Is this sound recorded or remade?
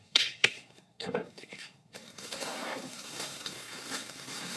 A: remade